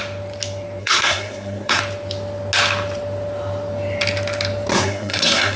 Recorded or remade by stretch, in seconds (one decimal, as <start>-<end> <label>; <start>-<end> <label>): 0.0-0.8 recorded; 0.8-1.8 remade; 1.8-4.7 recorded; 4.7-5.6 remade